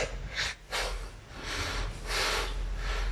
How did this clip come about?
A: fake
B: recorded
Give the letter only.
A